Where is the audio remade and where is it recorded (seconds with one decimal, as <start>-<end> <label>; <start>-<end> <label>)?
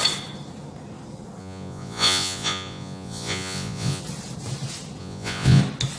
0.0-1.4 recorded; 1.4-4.0 remade; 4.0-5.0 recorded; 5.0-5.6 remade; 5.6-6.0 recorded